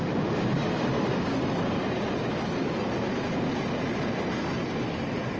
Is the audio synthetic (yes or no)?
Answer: no